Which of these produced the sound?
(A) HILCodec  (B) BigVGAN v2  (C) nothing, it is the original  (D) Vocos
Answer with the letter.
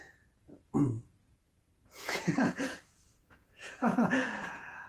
D